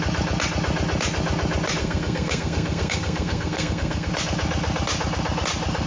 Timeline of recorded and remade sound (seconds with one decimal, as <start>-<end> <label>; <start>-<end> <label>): 0.0-1.8 recorded; 1.8-4.1 remade; 4.1-5.9 recorded